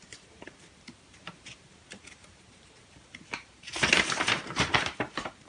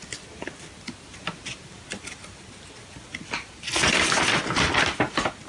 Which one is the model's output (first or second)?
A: first